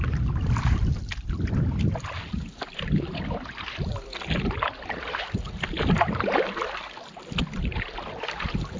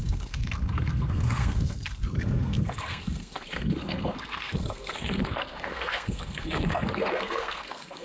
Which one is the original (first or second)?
first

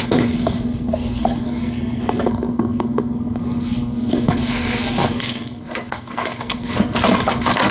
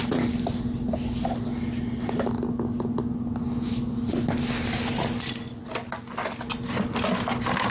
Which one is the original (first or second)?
second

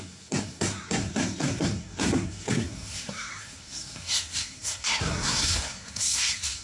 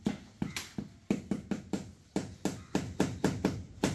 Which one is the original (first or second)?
second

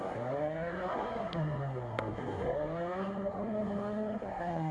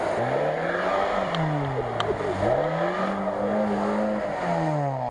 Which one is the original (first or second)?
second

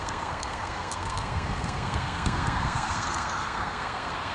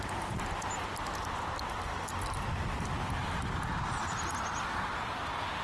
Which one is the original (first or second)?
second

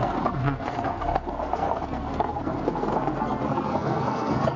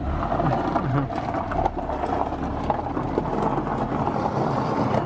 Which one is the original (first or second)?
second